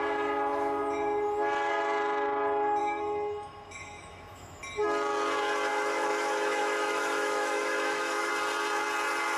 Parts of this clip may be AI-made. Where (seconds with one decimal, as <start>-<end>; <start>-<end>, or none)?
2.8-4.6; 5.7-8.3

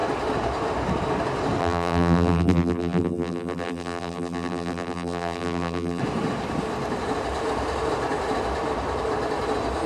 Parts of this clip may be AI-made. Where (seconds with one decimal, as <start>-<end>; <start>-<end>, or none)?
1.6-6.0

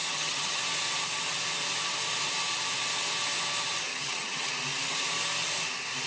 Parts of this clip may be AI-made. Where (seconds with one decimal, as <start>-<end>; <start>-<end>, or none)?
0.0-0.6; 3.9-4.5

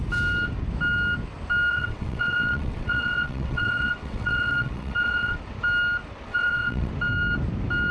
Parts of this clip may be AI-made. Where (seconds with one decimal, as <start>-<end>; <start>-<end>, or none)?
1.7-5.4; 6.3-6.9